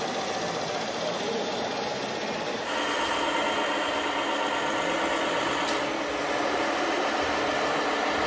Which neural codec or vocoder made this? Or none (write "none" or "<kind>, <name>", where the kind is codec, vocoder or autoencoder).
none